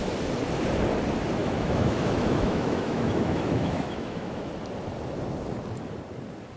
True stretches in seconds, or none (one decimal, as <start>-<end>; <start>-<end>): 0.0-1.4; 4.5-6.6